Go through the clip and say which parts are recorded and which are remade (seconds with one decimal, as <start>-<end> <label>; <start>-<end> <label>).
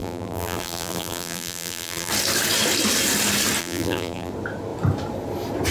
0.0-2.1 remade; 2.1-3.6 recorded; 3.6-4.3 remade; 4.3-5.7 recorded